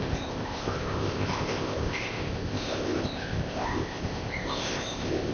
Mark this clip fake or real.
fake